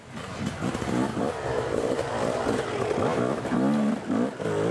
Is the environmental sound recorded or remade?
recorded